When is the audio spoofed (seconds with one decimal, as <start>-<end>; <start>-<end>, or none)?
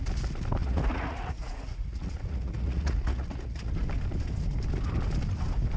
0.6-3.7